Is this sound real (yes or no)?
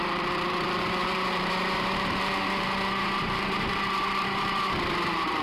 no